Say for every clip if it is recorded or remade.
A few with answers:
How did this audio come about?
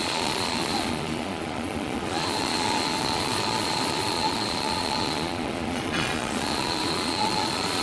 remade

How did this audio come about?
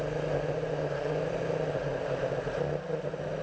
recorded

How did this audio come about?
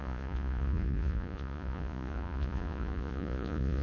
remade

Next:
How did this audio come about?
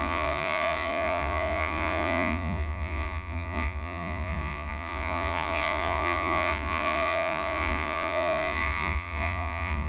remade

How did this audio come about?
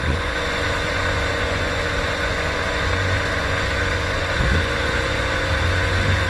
remade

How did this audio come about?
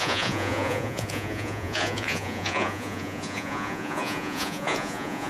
remade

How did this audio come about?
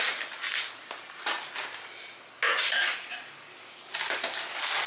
recorded